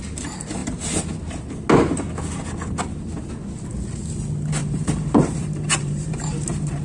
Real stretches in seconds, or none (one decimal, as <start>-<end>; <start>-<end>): 0.0-4.6